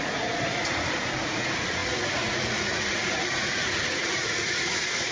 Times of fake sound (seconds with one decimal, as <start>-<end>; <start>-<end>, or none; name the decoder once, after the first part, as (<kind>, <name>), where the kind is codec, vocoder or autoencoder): 0.0-5.1 (vocoder, Vocos)